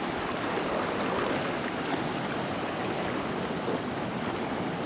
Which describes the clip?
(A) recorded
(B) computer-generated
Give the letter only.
A